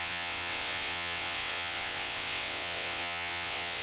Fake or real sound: fake